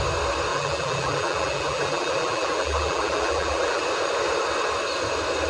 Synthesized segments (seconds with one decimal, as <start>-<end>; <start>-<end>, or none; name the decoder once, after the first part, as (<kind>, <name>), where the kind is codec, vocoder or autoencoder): 0.5-3.8 (vocoder, BigVGAN v2)